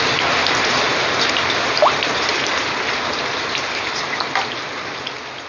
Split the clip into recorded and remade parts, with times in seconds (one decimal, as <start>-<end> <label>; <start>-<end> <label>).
0.0-0.9 recorded; 0.9-4.2 remade; 4.2-5.5 recorded

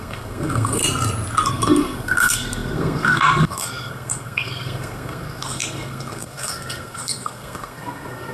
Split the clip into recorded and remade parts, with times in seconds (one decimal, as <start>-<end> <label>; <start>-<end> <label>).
0.0-0.8 remade; 0.8-1.5 recorded; 1.5-8.3 remade